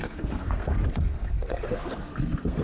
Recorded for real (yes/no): no